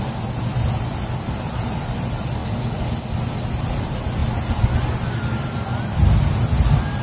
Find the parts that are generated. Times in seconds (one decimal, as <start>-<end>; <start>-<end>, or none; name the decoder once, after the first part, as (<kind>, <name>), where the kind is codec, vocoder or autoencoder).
none